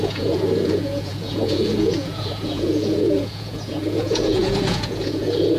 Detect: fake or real fake